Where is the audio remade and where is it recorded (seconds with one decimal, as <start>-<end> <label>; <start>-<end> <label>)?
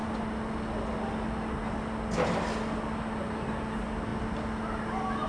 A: 0.0-5.3 recorded